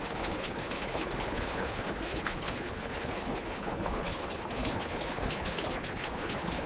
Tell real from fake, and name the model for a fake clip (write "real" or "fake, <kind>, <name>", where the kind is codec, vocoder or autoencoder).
fake, codec, HILCodec